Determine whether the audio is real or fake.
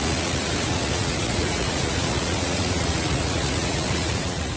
fake